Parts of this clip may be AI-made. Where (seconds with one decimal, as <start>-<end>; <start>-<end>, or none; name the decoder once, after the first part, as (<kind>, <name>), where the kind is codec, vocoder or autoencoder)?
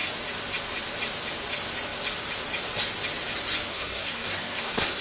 3.7-5.0 (codec, SNAC)